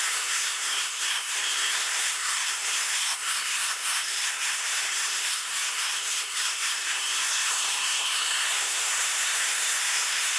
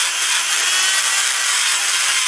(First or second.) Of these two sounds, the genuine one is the second